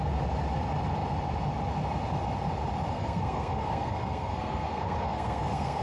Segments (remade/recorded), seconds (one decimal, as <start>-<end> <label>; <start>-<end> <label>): 0.0-2.9 recorded; 2.9-5.8 remade